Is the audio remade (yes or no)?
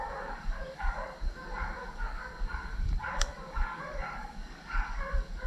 yes